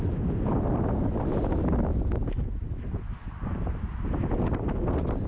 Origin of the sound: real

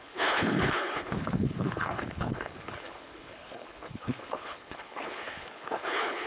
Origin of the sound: fake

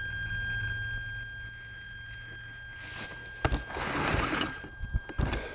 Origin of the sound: real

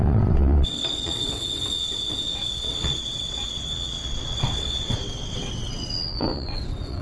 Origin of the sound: fake